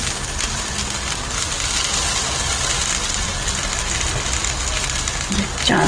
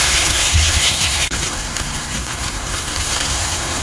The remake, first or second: second